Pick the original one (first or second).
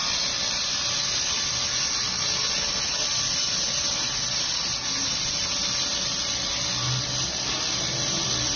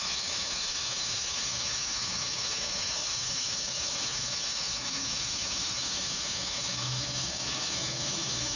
first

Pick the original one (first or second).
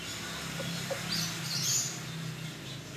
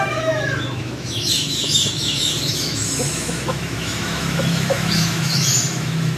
first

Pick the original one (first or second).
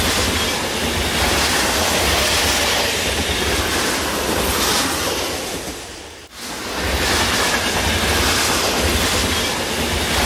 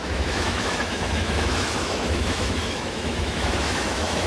first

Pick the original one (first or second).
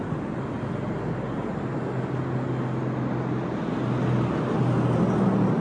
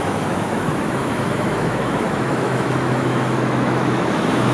first